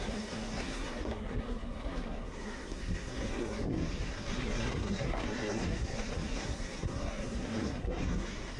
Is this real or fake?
fake